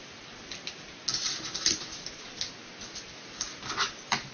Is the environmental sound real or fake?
real